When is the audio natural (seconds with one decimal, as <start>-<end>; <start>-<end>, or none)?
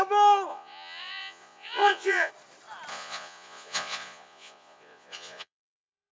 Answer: 0.0-0.5; 2.3-2.9